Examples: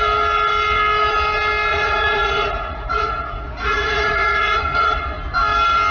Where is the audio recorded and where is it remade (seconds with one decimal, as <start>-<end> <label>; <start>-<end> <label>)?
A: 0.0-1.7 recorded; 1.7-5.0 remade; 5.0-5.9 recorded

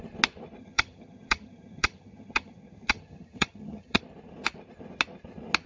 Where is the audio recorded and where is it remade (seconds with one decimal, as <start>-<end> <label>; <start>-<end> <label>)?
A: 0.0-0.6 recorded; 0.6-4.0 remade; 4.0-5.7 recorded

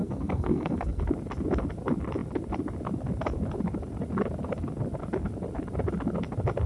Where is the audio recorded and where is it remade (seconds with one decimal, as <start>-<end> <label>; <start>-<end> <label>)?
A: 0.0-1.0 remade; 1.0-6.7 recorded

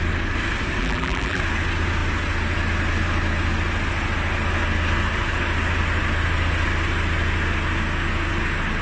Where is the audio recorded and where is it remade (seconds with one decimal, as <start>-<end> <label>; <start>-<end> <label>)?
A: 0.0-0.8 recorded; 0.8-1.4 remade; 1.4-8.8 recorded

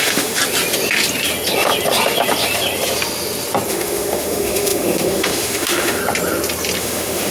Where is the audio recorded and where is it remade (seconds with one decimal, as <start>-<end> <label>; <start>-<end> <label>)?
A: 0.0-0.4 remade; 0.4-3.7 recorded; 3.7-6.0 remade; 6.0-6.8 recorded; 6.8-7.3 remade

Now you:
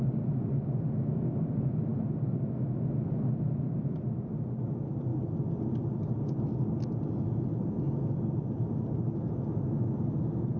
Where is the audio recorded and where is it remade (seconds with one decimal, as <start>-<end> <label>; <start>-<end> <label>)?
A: 0.0-10.6 recorded

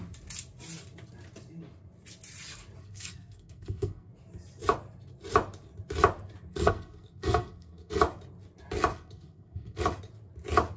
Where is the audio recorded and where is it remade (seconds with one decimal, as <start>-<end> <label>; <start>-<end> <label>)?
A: 0.0-2.8 recorded; 2.8-4.1 remade; 4.1-6.5 recorded; 6.5-8.0 remade; 8.0-8.9 recorded; 8.9-9.8 remade; 9.8-10.8 recorded

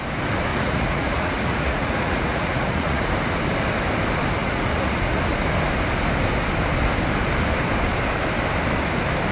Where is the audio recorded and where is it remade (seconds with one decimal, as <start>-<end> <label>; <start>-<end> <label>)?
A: 0.0-0.5 recorded; 0.5-3.1 remade; 3.1-4.4 recorded; 4.4-5.2 remade; 5.2-9.3 recorded